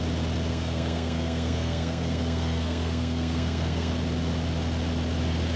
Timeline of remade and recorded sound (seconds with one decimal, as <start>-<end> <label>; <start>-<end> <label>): 0.0-0.5 recorded; 0.5-3.9 remade; 3.9-5.6 recorded